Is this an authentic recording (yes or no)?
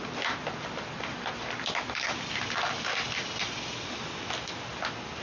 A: yes